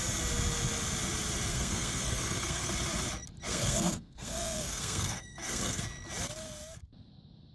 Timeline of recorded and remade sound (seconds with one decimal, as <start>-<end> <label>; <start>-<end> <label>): 0.0-1.5 recorded; 1.5-2.7 remade; 2.7-3.5 recorded; 3.5-5.8 remade; 5.8-7.5 recorded